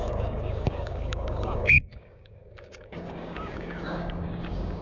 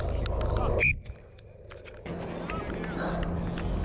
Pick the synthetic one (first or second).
first